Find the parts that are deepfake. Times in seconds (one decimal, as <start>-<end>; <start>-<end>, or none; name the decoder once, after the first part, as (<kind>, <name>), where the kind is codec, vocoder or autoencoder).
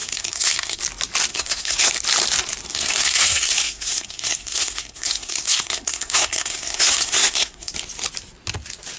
0.0-0.8 (codec, SNAC); 1.3-1.9; 2.7-7.7